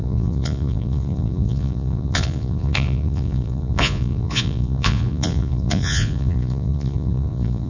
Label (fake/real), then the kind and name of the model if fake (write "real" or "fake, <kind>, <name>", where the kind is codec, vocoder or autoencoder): fake, vocoder, Vocos